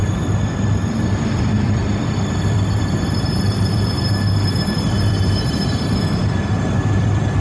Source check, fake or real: fake